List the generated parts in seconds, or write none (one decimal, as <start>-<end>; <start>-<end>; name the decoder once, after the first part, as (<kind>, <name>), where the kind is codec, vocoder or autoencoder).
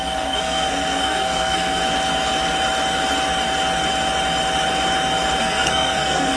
0.0-1.8 (codec, SNAC); 5.4-6.4